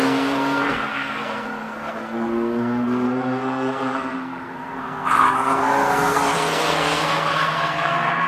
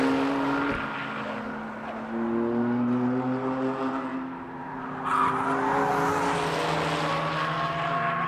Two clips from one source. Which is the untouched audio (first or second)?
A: second